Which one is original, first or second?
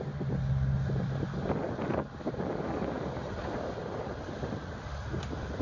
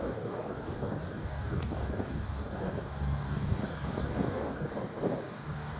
first